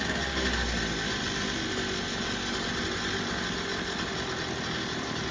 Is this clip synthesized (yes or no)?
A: no